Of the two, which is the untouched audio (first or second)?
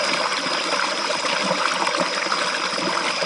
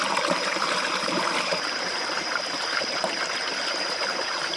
first